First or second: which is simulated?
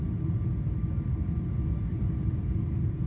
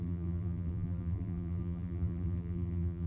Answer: second